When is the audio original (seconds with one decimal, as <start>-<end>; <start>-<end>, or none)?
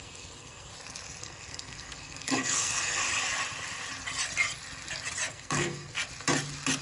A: 0.7-1.2; 3.0-5.3; 6.0-6.8